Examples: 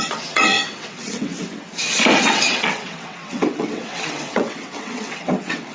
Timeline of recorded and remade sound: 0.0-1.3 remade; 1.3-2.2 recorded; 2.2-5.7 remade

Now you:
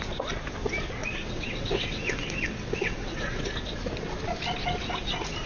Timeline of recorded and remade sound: 0.0-1.0 recorded; 1.0-3.5 remade; 3.5-5.5 recorded

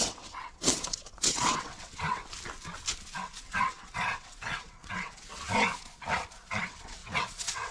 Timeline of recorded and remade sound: 0.0-2.2 remade; 2.2-3.2 recorded; 3.2-5.3 remade; 5.3-6.6 recorded; 6.6-7.7 remade

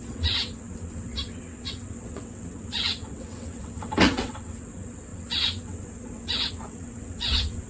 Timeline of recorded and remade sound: 0.0-7.7 remade